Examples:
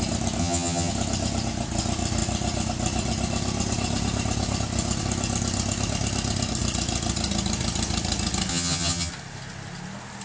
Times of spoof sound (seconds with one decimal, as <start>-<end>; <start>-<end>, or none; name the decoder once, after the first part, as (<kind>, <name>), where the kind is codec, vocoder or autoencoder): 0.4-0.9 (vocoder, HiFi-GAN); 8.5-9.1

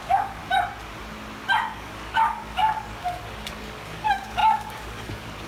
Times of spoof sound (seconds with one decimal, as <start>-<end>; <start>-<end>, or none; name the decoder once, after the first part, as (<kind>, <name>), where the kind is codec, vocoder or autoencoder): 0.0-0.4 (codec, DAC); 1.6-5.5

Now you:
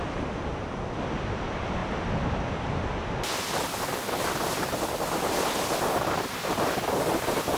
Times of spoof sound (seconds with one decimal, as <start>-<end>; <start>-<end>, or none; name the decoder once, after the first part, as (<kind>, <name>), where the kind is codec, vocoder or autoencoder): none

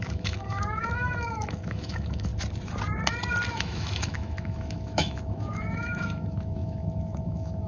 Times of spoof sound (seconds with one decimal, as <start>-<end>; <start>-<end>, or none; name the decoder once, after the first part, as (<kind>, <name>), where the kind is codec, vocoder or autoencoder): 0.0-2.3 (autoencoder, DAC-VAE); 3.5-7.7

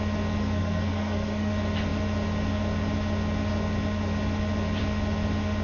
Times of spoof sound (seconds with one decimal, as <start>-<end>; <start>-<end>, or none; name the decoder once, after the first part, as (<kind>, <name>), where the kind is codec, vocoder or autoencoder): 0.4-1.5 (codec, SNAC)

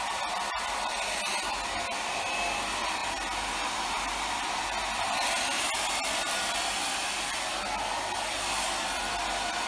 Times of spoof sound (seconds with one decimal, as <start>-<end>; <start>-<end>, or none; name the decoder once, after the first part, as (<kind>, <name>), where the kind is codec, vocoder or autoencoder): none